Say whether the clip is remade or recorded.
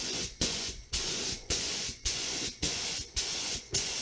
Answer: remade